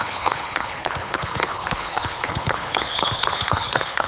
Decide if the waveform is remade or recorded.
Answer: remade